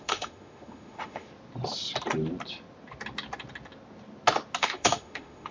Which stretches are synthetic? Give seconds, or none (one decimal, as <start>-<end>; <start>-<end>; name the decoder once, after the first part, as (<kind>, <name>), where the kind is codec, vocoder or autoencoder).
0.0-1.3 (autoencoder, DAC-VAE); 4.6-5.5